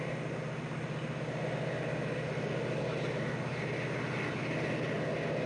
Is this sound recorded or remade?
recorded